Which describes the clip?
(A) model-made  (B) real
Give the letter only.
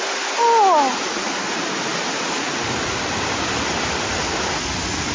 B